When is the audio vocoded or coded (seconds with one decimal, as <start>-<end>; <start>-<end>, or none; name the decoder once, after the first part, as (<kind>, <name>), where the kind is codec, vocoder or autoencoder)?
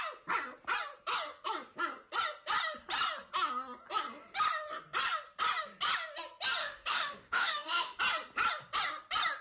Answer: 6.6-8.0 (autoencoder, DAC-VAE)